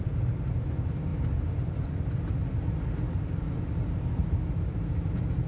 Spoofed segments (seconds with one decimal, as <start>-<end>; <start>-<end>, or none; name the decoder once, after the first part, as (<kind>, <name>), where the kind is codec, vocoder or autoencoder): none